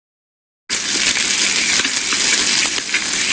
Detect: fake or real real